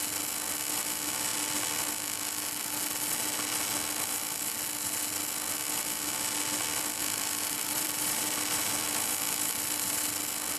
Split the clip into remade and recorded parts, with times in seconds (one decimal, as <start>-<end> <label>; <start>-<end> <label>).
0.0-7.0 recorded; 7.0-10.1 remade; 10.1-10.6 recorded